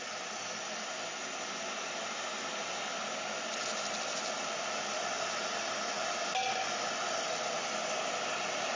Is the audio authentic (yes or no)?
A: yes